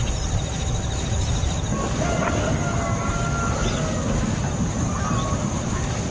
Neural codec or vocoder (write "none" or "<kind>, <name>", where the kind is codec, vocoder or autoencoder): none